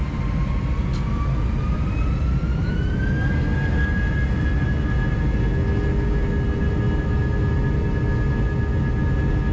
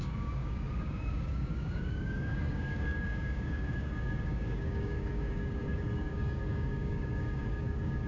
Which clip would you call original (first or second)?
first